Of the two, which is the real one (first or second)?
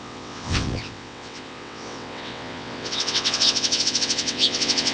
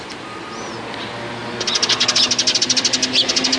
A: second